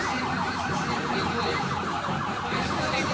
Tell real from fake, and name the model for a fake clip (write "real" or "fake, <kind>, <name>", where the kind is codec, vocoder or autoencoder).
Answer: fake, vocoder, BigVGAN v2